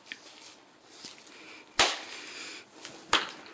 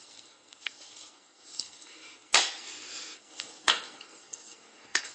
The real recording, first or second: first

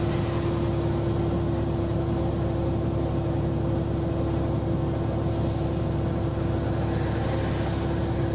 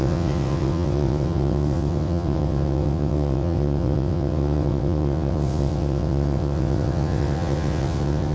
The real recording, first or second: first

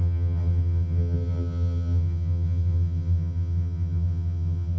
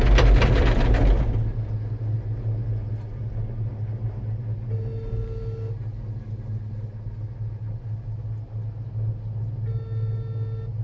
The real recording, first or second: second